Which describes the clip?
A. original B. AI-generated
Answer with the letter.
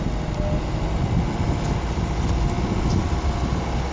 A